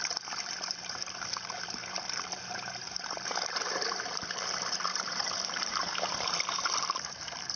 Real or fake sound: fake